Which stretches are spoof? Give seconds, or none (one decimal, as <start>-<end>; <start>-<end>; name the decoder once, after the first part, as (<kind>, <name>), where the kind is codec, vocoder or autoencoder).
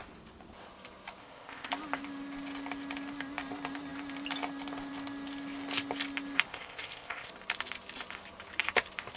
1.2-1.7 (codec, ZipCodec); 6.5-7.3